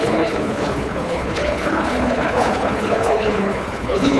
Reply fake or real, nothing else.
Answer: fake